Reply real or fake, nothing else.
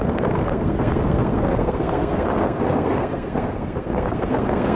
fake